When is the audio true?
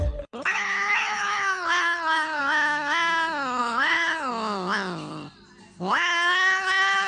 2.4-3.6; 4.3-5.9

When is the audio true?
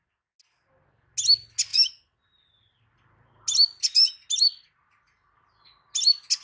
0.0-6.4